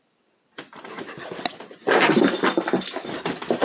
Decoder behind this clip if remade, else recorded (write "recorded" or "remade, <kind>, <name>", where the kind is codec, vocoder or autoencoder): recorded